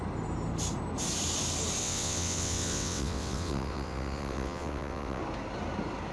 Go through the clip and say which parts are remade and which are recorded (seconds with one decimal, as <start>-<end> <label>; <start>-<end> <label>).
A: 0.0-1.8 recorded; 1.8-5.2 remade; 5.2-6.1 recorded